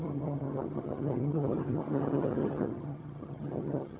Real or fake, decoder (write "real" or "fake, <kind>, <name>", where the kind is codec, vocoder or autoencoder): fake, vocoder, HiFi-GAN